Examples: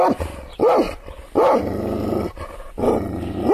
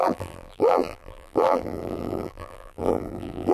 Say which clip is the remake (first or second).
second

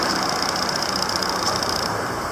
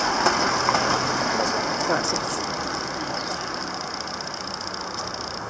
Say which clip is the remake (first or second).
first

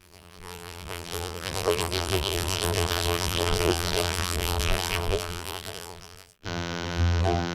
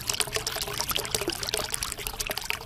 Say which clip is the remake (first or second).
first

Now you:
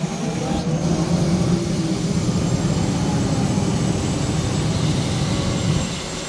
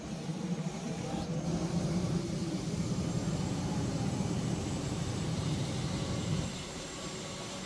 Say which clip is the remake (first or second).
second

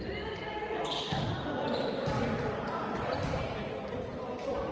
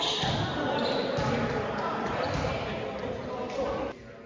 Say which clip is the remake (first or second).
first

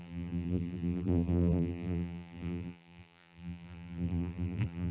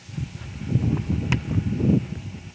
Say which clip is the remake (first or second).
first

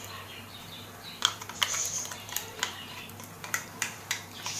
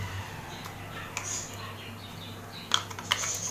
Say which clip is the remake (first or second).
first